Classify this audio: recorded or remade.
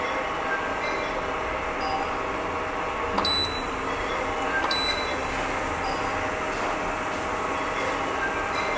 recorded